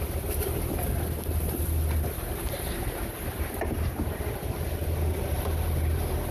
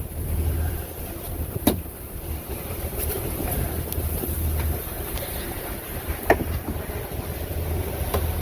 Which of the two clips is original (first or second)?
first